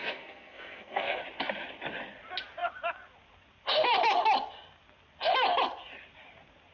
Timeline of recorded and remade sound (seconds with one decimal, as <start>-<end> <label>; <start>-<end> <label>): 0.0-1.2 remade; 1.2-6.7 recorded